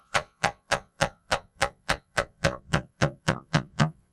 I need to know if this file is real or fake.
fake